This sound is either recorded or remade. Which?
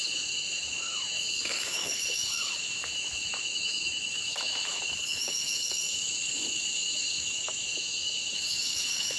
remade